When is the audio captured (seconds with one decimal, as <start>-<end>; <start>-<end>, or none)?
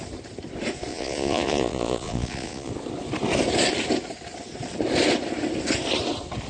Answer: 0.0-0.9; 2.7-6.5